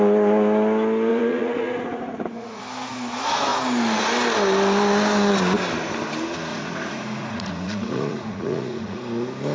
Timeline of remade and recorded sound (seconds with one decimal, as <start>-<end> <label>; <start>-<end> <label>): 0.0-1.1 recorded; 1.1-2.6 remade; 2.6-6.5 recorded; 6.5-9.0 remade; 9.0-9.5 recorded